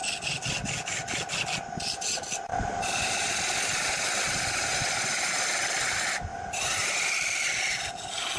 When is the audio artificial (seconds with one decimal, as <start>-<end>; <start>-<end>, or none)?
2.5-5.0; 6.3-7.1